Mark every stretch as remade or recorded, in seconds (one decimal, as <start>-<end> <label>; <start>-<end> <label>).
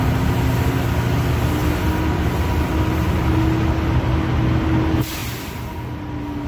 0.0-6.5 recorded